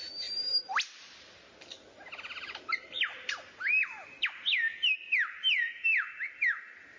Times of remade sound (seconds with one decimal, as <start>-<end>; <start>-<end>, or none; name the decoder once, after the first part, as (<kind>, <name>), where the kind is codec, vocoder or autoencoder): none